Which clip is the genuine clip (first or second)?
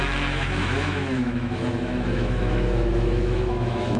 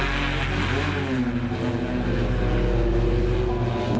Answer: second